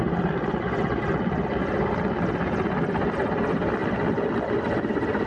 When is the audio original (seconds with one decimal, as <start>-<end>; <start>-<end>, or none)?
0.0-5.3